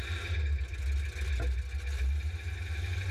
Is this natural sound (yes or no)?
yes